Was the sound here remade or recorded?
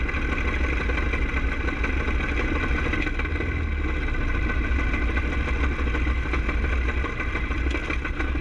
recorded